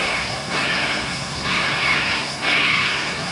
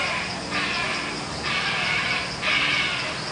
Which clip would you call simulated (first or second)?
first